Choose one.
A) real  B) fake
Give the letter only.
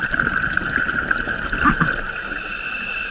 A